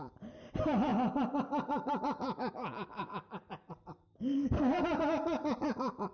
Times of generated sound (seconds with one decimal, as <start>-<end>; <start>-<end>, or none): 4.1-4.8